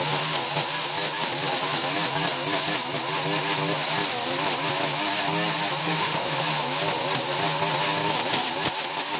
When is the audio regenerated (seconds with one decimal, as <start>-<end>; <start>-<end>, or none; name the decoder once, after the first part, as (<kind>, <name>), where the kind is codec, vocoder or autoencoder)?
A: 5.8-6.4 (autoencoder, DAC-VAE)